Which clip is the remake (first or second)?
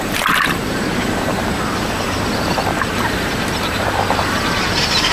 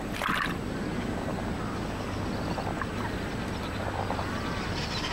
first